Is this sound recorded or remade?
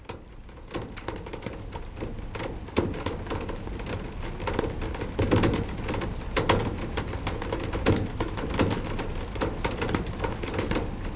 recorded